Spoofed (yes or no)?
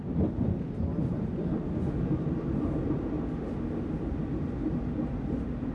no